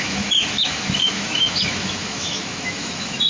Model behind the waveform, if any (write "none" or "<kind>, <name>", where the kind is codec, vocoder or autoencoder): autoencoder, DAC-VAE